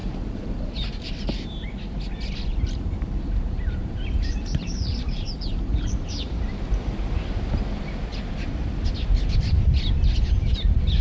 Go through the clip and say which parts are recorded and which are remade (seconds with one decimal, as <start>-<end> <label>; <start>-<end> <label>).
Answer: 0.0-1.1 remade; 1.1-2.5 recorded; 2.5-6.4 remade; 6.4-11.0 recorded